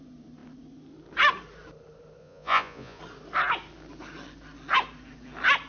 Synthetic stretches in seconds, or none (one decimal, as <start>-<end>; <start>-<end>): 2.2-3.0